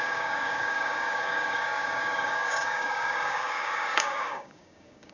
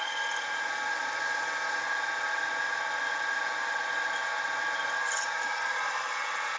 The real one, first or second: second